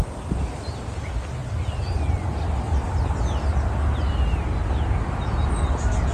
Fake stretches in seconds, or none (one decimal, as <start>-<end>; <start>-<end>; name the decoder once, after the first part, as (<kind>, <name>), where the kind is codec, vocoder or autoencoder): none